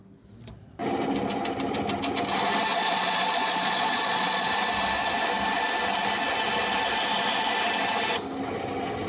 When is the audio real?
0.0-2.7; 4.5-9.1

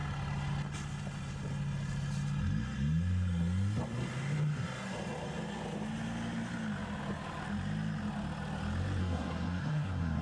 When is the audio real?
0.0-9.0

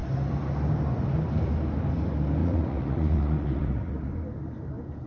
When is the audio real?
0.0-2.4; 4.1-5.1

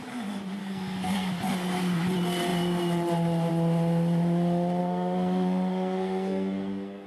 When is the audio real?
0.0-0.6; 1.3-4.8

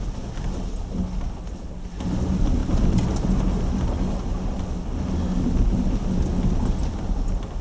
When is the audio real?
0.0-7.6

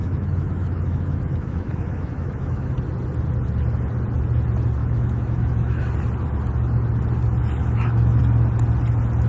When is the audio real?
2.7-4.8; 5.8-7.6; 8.2-9.3

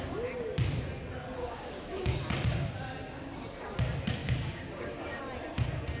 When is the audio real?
0.0-1.4; 2.2-4.2; 5.2-6.0